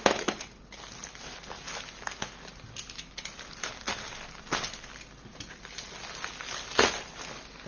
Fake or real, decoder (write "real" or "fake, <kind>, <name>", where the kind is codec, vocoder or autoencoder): real